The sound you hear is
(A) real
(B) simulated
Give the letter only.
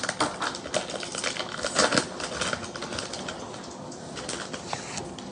A